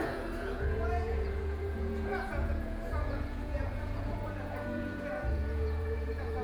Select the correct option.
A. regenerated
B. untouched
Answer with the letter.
A